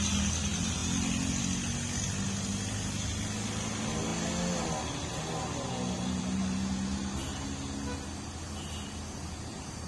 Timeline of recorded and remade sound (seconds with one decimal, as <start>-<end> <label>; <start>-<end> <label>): 0.0-9.9 recorded